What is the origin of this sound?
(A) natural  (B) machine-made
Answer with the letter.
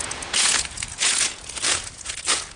B